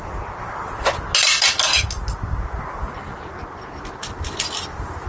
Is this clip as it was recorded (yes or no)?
yes